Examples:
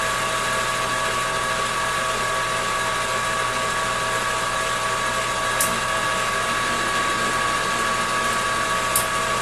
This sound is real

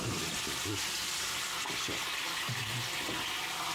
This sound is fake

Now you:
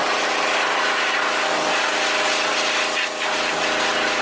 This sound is real